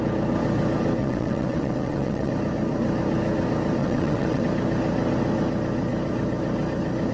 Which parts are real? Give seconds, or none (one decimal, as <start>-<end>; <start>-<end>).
0.0-1.0; 2.3-3.8; 4.4-7.1